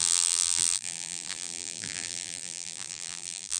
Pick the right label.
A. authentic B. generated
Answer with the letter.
B